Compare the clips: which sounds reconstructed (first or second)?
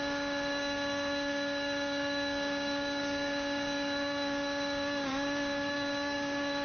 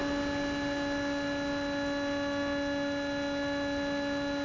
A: first